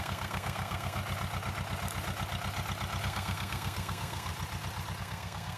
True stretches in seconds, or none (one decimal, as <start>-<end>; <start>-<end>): 1.0-3.0; 4.3-5.0